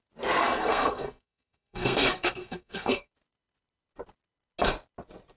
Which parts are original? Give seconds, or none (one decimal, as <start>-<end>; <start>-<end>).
0.0-0.4; 3.1-5.4